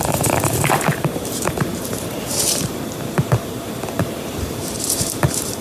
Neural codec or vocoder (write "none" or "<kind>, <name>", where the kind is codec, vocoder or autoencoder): vocoder, BigVGAN v2